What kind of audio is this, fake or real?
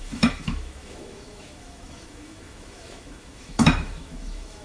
fake